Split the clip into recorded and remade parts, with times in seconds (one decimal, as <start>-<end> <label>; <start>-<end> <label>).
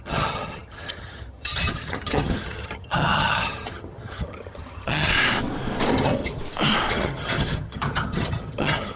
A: 0.0-5.1 remade; 5.1-5.9 recorded; 5.9-6.4 remade; 6.4-6.9 recorded; 6.9-9.0 remade